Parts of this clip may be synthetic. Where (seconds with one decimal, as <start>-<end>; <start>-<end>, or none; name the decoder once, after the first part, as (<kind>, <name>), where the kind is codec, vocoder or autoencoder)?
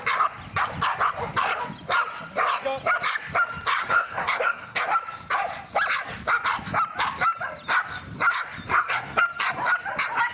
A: 3.8-4.8 (codec, SNAC); 8.7-9.2